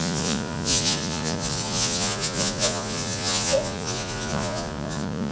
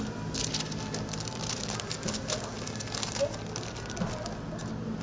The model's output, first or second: first